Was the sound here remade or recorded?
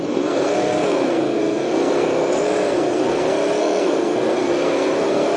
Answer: remade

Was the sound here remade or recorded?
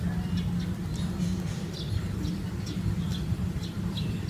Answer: recorded